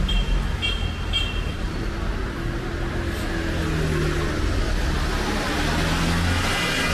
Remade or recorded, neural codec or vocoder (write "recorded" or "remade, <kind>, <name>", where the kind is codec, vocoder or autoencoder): recorded